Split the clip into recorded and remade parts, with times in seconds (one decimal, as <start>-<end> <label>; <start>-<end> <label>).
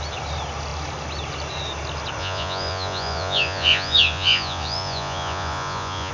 0.0-2.2 recorded; 2.2-6.1 remade